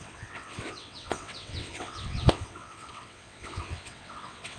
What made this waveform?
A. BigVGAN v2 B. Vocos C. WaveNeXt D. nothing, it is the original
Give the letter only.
C